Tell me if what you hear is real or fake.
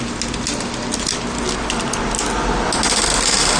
real